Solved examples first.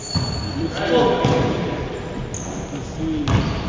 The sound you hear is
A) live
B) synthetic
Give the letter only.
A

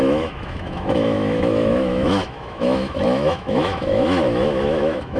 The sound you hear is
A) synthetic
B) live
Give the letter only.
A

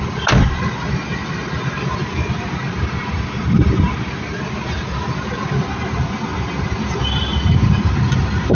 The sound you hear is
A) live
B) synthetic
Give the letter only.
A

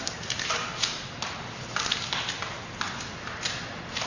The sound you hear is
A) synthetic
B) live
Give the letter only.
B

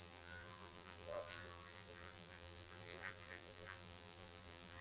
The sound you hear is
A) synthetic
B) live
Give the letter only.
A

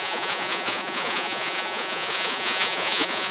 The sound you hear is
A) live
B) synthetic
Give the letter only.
B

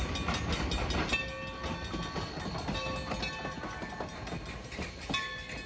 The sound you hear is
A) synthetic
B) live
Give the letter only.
B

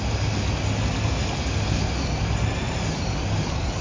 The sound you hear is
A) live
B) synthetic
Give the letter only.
A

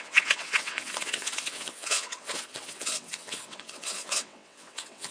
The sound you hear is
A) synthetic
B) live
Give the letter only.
A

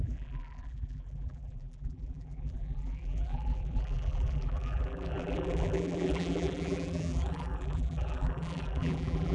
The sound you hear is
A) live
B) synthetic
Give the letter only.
B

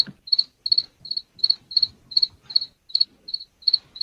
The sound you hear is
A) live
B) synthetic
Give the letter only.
A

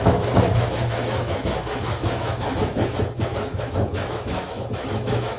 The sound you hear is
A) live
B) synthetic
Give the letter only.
B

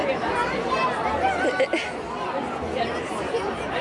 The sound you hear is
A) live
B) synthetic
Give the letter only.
A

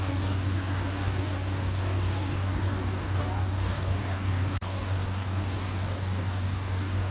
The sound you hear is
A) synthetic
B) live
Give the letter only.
A